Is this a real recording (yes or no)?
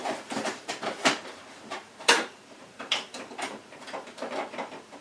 no